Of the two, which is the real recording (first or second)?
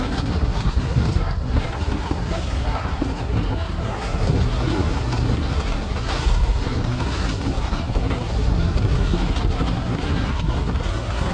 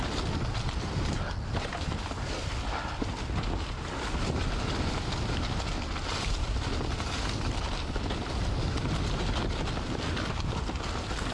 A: second